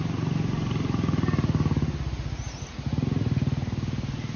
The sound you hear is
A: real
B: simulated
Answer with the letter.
A